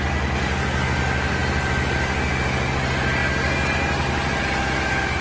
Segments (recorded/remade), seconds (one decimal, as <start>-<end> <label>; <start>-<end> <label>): 0.0-5.2 recorded